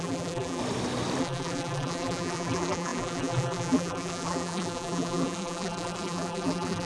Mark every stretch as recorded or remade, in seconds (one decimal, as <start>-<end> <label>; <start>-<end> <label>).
0.0-0.6 remade; 0.6-1.2 recorded; 1.2-6.9 remade